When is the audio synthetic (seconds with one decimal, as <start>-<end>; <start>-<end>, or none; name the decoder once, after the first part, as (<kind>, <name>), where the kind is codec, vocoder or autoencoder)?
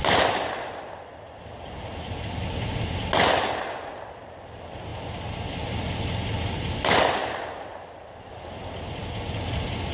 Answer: 0.0-0.7 (vocoder, BigVGAN v2); 7.2-8.3